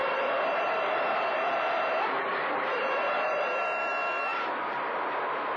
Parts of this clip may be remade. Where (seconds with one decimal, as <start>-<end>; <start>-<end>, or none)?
0.0-1.3